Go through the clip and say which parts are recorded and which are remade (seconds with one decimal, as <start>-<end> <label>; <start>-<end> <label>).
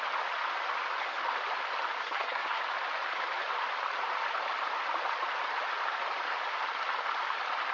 0.0-2.0 recorded; 2.0-2.6 remade; 2.6-7.7 recorded